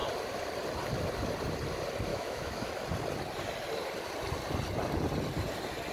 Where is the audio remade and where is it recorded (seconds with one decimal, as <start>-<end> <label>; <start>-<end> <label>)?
0.0-2.1 recorded; 2.1-2.7 remade; 2.7-5.9 recorded